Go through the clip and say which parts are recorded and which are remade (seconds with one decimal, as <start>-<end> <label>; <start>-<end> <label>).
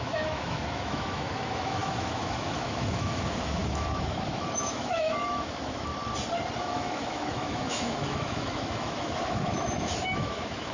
0.0-5.9 remade; 5.9-6.6 recorded; 6.6-10.7 remade